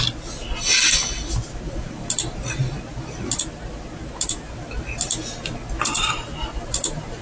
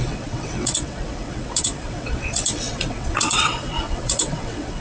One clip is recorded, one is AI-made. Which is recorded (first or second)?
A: first